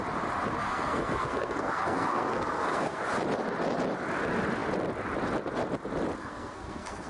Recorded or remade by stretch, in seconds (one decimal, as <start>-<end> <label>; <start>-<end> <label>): 0.0-0.5 recorded; 0.5-3.0 remade; 3.0-6.2 recorded; 6.2-7.1 remade